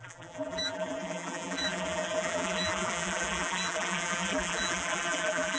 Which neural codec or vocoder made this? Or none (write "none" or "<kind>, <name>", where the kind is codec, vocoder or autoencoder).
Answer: vocoder, BigVGAN v2